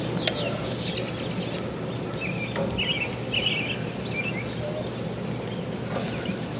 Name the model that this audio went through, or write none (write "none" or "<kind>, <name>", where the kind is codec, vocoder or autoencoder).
none